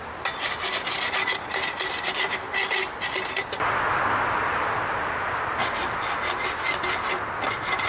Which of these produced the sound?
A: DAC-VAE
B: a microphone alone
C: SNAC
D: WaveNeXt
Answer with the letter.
B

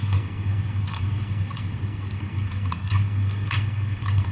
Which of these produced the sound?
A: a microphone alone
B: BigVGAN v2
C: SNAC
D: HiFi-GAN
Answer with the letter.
C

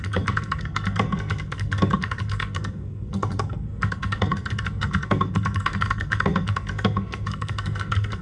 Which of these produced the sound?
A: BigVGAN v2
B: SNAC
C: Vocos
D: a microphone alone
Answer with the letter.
B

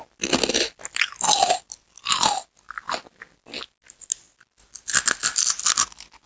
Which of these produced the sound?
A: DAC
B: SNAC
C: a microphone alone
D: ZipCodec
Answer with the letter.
C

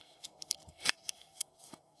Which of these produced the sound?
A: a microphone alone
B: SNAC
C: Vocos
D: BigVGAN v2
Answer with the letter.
B